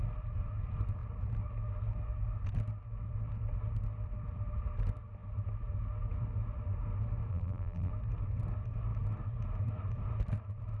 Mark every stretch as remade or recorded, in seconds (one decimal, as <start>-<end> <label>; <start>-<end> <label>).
0.0-7.3 recorded; 7.3-7.9 remade; 7.9-10.8 recorded